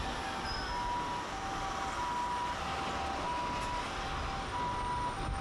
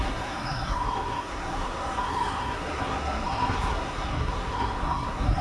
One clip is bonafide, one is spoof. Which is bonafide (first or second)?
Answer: first